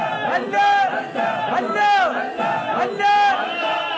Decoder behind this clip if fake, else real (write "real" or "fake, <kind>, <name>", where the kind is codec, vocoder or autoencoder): real